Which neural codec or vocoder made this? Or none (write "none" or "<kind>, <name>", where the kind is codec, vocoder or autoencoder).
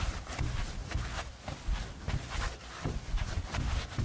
none